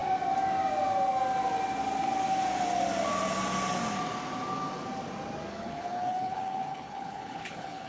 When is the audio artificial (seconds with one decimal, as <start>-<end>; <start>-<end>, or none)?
5.5-7.9